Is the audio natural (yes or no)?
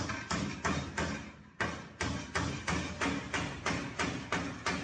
yes